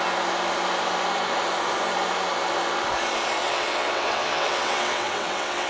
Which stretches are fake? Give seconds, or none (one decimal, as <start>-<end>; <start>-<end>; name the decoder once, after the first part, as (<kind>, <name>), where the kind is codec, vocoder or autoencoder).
3.4-5.7 (vocoder, WaveNeXt)